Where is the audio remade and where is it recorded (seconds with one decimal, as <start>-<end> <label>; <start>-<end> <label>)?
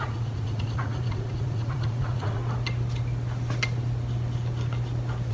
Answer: 0.0-2.4 remade; 2.4-5.3 recorded